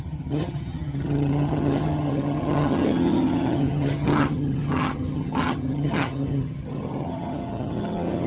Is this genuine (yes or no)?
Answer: no